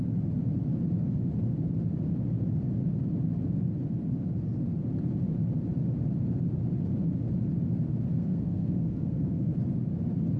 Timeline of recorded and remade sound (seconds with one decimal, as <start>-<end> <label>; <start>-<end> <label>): 0.0-8.1 recorded; 8.1-9.5 remade; 9.5-10.4 recorded

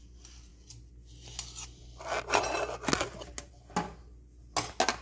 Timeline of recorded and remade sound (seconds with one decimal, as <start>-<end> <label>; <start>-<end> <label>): 0.0-5.0 recorded

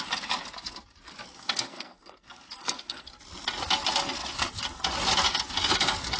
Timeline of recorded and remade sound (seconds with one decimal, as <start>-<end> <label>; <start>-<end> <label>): 0.0-1.3 recorded; 1.3-3.2 remade; 3.2-6.2 recorded